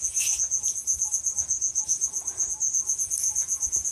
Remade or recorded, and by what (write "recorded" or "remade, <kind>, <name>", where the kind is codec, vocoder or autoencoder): remade, vocoder, Vocos